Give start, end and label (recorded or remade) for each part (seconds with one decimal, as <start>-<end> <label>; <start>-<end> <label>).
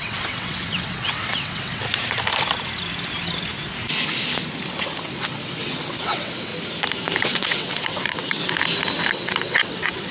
0.0-1.8 remade; 1.8-5.0 recorded; 5.0-6.5 remade; 6.5-7.2 recorded; 7.2-8.4 remade; 8.4-9.1 recorded; 9.1-10.1 remade